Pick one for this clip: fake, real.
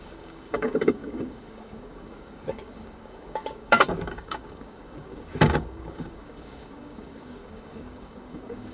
fake